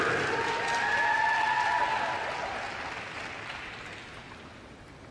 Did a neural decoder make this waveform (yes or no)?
no